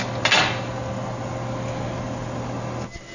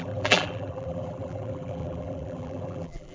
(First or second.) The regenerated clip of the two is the second